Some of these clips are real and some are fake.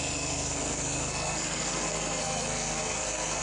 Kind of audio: fake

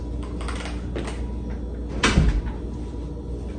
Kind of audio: real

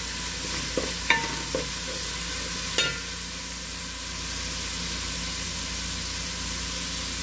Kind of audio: real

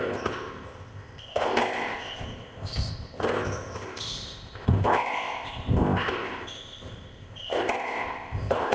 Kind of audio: fake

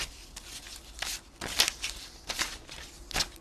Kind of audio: real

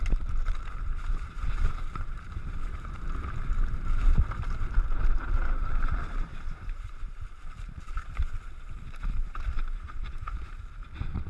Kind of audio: fake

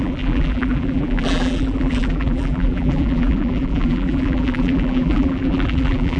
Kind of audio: fake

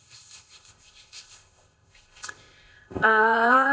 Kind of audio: fake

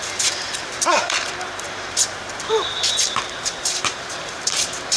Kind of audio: fake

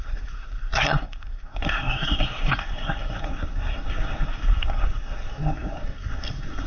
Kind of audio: fake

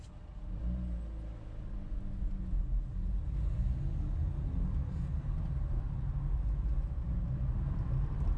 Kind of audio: real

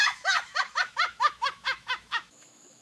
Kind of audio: fake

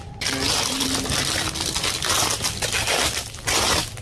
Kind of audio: fake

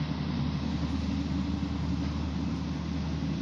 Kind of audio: real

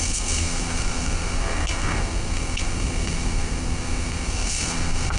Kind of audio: fake